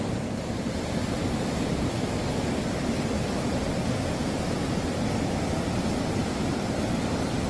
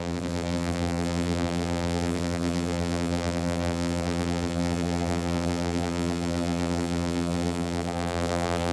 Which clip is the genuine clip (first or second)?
first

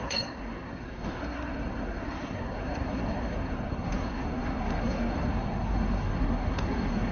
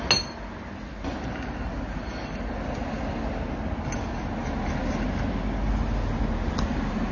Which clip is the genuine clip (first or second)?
second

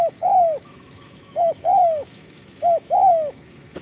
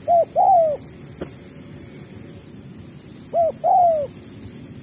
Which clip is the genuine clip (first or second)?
second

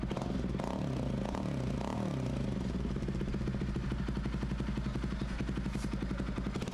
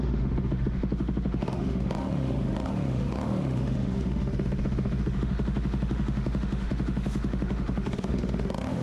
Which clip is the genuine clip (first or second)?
first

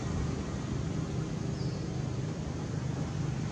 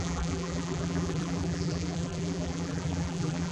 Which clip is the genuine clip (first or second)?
first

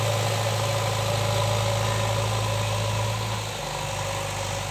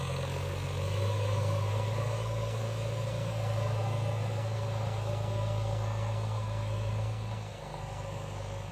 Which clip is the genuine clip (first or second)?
first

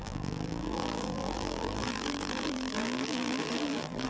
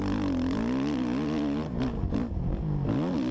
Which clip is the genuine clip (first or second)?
second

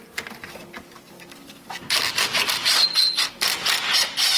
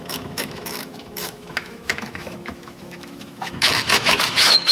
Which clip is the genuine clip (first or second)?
first